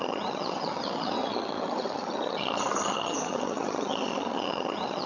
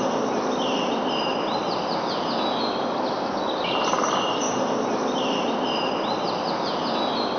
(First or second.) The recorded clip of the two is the second